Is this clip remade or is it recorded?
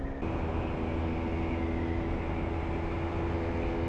recorded